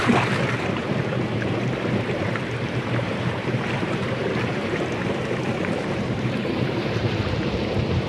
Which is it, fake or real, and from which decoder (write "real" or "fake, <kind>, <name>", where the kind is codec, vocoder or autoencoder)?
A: fake, vocoder, BigVGAN v2